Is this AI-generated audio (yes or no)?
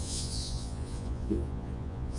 yes